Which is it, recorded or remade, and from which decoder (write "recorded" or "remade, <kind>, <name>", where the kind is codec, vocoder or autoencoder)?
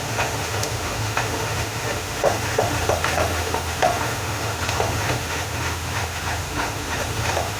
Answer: remade, autoencoder, DAC-VAE